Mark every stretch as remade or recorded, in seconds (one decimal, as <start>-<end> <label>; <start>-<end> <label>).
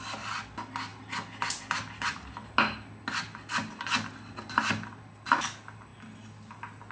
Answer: 0.0-6.9 recorded